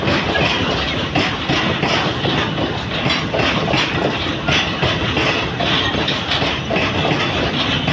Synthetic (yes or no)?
no